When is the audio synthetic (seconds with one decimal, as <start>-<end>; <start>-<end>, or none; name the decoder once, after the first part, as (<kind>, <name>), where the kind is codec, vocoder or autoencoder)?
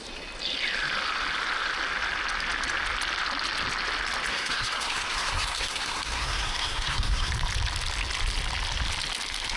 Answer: 4.3-7.3 (codec, SNAC)